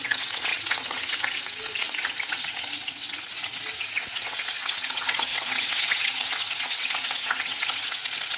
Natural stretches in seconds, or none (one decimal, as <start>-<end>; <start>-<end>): none